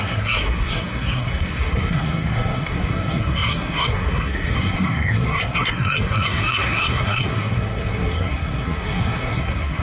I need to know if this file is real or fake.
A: fake